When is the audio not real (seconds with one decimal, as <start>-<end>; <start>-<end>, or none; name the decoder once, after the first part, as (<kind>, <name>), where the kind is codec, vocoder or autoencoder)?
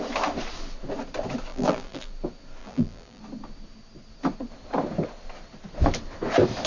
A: 1.5-2.1 (vocoder, BigVGAN v2); 2.6-3.2